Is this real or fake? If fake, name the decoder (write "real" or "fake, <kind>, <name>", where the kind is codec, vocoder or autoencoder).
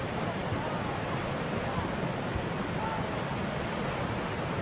real